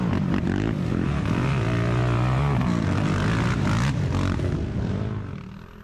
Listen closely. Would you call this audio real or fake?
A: real